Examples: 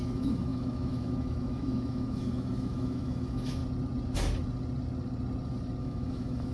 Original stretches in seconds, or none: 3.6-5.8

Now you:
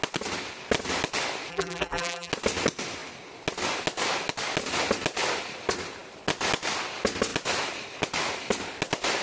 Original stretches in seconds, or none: 0.0-1.5; 2.3-9.2

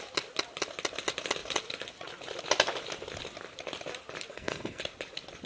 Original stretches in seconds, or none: 0.0-4.3; 4.8-5.5

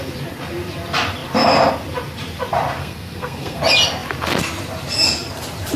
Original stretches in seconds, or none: 0.0-2.8; 3.6-5.8

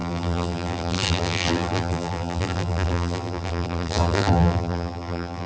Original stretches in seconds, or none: none

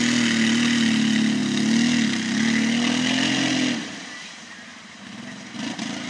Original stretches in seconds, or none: 0.0-6.1